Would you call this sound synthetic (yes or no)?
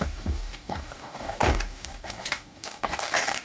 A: yes